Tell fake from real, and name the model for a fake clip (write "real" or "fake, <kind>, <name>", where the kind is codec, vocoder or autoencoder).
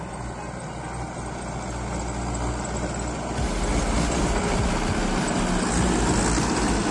real